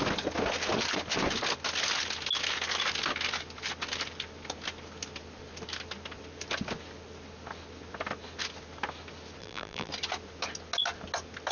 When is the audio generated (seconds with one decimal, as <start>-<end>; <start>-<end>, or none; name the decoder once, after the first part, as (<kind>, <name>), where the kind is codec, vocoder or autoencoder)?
9.4-9.9 (vocoder, BigVGAN v2)

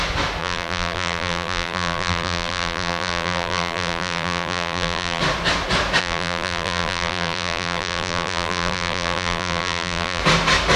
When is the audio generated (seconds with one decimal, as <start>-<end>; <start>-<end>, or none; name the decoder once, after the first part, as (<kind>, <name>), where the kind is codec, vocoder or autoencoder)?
0.4-5.2 (vocoder, BigVGAN v2); 6.0-10.2

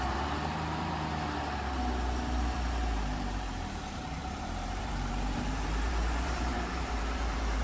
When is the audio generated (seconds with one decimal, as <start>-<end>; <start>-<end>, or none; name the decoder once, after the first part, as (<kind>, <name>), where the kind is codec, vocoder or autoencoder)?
0.0-1.1 (vocoder, BigVGAN v2); 1.8-7.6

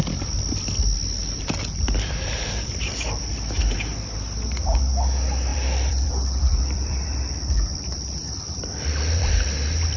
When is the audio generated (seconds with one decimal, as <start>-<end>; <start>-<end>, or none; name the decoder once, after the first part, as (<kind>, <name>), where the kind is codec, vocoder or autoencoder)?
1.2-3.2 (vocoder, BigVGAN v2); 5.5-9.5

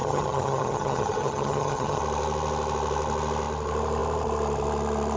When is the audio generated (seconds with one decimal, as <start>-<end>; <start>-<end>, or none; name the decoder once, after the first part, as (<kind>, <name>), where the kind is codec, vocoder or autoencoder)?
0.0-2.0 (vocoder, HiFi-GAN)

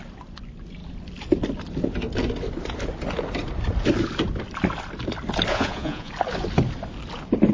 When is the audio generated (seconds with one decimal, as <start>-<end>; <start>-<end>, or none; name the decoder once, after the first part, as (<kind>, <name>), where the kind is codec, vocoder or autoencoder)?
5.5-6.1 (vocoder, Vocos)

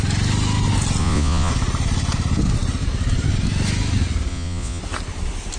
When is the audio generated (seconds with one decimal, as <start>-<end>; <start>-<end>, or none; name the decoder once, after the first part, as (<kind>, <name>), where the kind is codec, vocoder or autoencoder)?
1.0-1.5 (vocoder, Vocos); 4.3-4.8

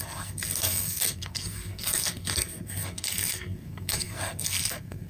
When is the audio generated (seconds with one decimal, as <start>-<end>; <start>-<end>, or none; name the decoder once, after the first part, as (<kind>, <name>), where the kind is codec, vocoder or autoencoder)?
0.0-5.1 (codec, SNAC)